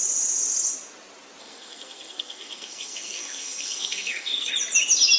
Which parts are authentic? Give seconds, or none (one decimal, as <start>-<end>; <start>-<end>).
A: 0.0-1.4; 4.5-5.2